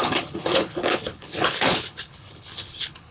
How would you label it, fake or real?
fake